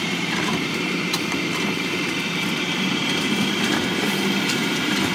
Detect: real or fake fake